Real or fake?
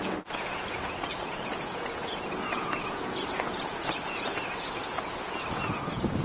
fake